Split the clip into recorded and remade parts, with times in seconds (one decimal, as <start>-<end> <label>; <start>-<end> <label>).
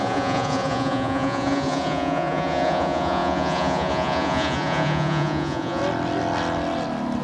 0.0-5.8 remade; 5.8-7.2 recorded